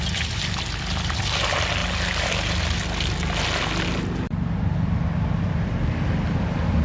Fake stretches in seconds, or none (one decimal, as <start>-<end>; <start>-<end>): none